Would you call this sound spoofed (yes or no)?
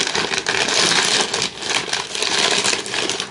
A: no